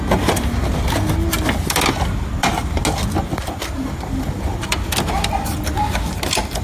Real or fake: real